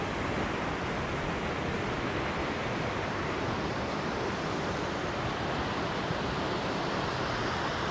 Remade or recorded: recorded